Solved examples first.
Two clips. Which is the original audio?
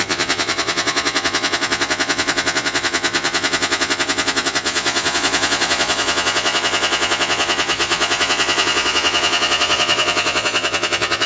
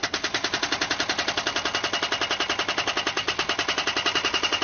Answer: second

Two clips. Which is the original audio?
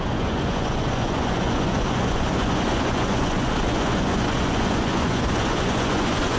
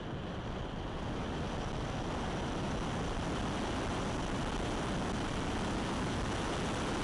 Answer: second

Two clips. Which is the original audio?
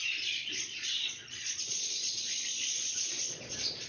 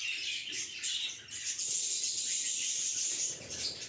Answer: second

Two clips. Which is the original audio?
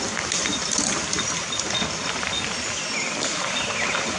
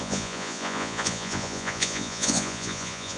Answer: first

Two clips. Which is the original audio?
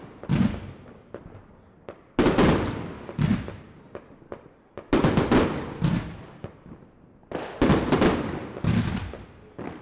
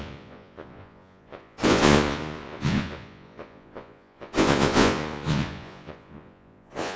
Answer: first